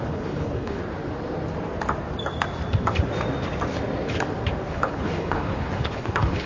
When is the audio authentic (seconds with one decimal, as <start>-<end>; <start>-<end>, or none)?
0.8-4.7